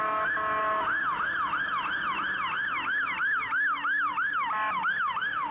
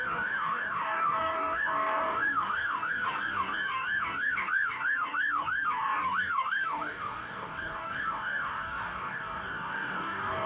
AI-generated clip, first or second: second